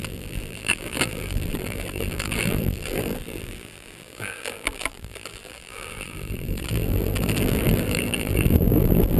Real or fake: fake